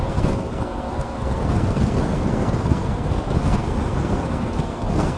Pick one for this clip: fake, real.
fake